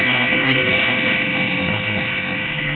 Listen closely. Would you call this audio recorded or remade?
remade